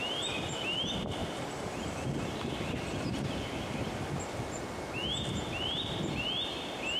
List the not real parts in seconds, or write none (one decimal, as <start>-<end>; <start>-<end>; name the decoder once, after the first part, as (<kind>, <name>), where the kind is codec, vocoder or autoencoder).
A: none